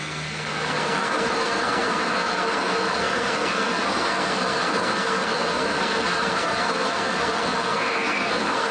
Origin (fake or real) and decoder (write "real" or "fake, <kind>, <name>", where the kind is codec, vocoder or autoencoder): fake, codec, SNAC